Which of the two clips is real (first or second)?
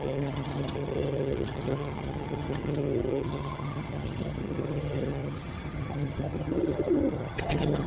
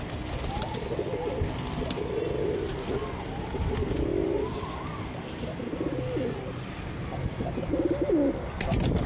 second